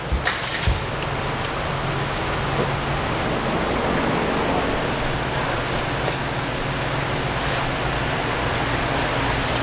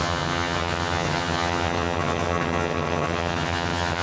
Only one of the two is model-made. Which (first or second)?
second